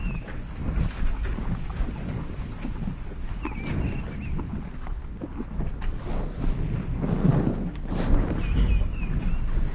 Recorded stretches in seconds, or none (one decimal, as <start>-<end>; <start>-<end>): 0.0-9.7